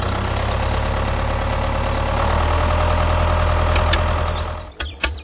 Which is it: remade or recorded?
recorded